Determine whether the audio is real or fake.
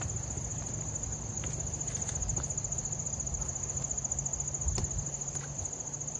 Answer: real